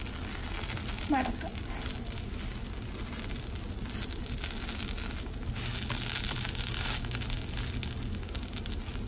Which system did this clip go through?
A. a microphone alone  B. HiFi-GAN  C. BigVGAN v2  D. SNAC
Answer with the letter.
A